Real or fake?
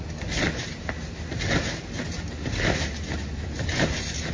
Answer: real